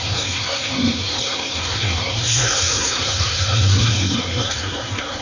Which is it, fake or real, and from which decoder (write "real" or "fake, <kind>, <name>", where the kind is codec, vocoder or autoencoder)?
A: fake, codec, SNAC